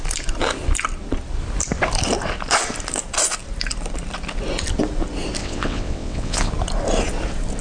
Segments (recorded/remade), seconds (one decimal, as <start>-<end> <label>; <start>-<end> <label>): 0.0-5.4 recorded; 5.4-6.5 remade; 6.5-7.6 recorded

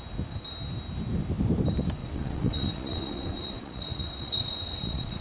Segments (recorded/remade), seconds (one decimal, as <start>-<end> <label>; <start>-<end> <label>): 0.0-2.0 recorded; 2.0-5.2 remade

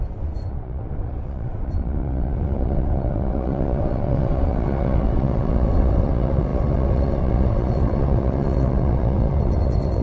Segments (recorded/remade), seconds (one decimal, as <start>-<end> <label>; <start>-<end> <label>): 0.0-10.0 remade

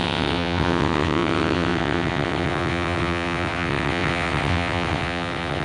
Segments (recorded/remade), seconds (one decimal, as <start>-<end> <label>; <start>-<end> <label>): 0.0-5.6 remade

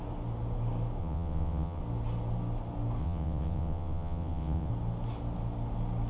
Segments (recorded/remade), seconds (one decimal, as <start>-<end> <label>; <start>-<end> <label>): 0.0-1.0 recorded; 1.0-1.8 remade; 1.8-3.0 recorded; 3.0-4.7 remade; 4.7-6.1 recorded

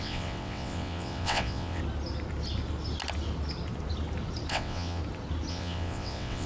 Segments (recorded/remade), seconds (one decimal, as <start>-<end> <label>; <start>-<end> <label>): 0.0-1.8 remade; 1.8-4.5 recorded; 4.5-5.0 remade; 5.0-5.5 recorded; 5.5-6.5 remade